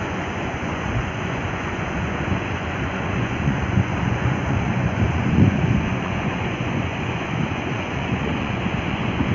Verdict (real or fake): fake